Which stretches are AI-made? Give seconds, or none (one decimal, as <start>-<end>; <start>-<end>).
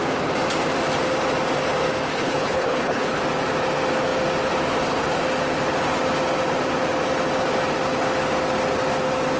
2.1-3.2